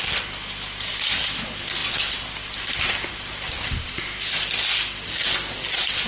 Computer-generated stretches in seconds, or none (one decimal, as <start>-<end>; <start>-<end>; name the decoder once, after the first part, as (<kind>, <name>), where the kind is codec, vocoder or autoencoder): none